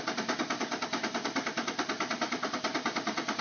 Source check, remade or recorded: remade